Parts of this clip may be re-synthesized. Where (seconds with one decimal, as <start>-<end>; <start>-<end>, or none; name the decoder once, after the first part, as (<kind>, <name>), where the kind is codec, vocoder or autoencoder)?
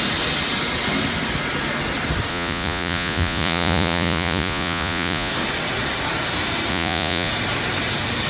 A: 2.3-5.3 (vocoder, Vocos); 6.7-7.3